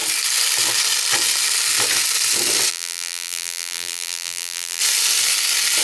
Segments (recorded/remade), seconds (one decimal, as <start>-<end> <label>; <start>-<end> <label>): 0.0-2.7 recorded; 2.7-4.8 remade; 4.8-5.8 recorded